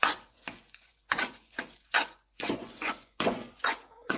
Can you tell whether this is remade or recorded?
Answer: remade